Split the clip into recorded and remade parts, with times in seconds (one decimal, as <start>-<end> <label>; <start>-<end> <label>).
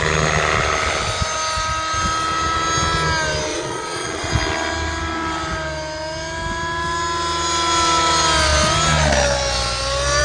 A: 0.0-3.5 recorded; 3.5-4.3 remade; 4.3-10.2 recorded